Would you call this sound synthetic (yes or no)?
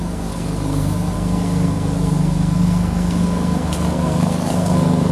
yes